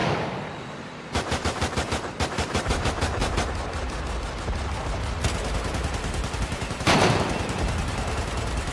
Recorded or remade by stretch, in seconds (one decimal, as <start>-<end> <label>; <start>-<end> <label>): 0.0-0.6 recorded; 0.6-3.2 remade; 3.2-6.4 recorded; 6.4-8.7 remade